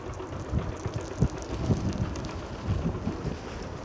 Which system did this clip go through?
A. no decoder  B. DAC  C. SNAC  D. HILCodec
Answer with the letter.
A